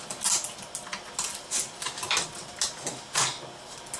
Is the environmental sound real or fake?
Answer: real